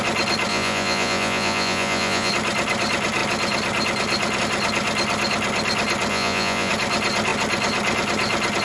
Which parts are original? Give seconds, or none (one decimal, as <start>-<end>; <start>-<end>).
0.0-0.5; 2.3-6.1; 6.7-8.6